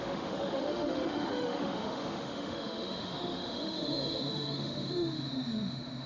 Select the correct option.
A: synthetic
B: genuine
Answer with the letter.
A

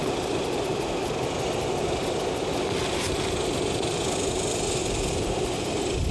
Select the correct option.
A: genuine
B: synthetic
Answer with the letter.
A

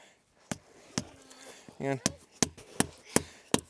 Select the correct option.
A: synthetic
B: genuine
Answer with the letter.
B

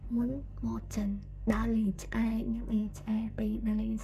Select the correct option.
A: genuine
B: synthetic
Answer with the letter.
B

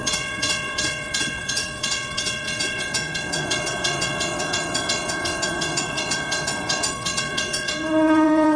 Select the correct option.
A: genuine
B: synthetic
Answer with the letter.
B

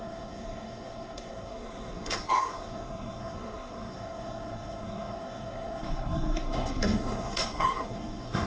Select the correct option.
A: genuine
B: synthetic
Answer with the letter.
B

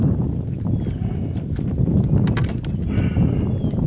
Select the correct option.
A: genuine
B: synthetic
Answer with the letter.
A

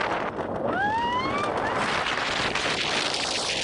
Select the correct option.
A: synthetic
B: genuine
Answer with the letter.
B